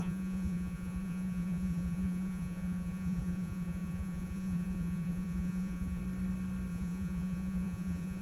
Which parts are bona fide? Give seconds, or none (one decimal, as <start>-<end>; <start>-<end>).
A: 6.0-6.7